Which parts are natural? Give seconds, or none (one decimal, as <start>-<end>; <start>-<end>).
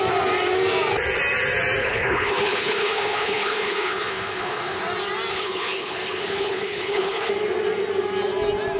0.0-1.8; 4.8-5.3; 7.3-8.8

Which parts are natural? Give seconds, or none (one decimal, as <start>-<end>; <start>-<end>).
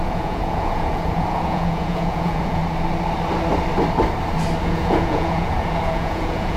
2.6-4.6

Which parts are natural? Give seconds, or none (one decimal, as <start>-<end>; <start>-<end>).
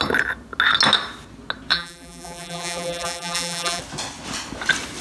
0.0-1.7; 3.8-5.0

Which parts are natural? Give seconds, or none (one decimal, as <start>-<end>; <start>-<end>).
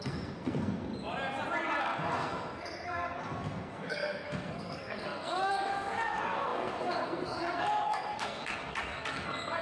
0.9-1.8